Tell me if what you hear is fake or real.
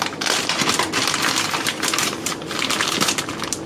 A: real